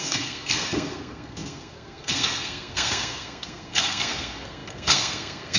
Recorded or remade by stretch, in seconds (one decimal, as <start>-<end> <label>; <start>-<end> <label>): 0.0-5.6 remade